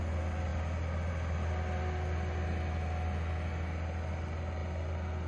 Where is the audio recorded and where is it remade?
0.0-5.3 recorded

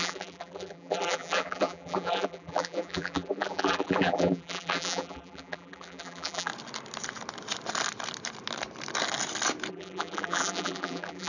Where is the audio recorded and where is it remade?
0.0-6.5 remade; 6.5-9.7 recorded; 9.7-11.3 remade

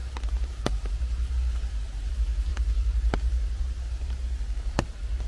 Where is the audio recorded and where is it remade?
0.0-2.1 remade; 2.1-2.5 recorded; 2.5-4.2 remade; 4.2-5.3 recorded

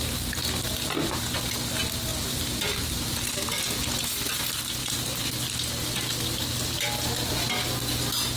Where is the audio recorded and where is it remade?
0.0-2.1 recorded; 2.1-3.3 remade; 3.3-4.8 recorded; 4.8-5.5 remade; 5.5-8.4 recorded

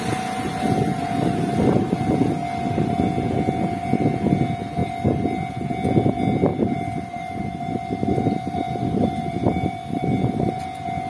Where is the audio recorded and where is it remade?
0.0-4.8 recorded; 4.8-5.5 remade; 5.5-6.5 recorded; 6.5-10.6 remade; 10.6-11.1 recorded

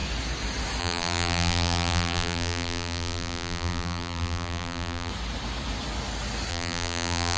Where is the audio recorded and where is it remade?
0.0-0.8 recorded; 0.8-5.1 remade; 5.1-6.5 recorded; 6.5-7.4 remade